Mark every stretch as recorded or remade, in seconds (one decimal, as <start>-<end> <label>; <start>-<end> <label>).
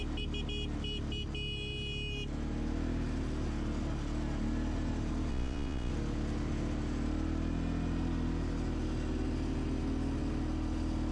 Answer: 0.0-5.3 recorded; 5.3-5.9 remade; 5.9-11.1 recorded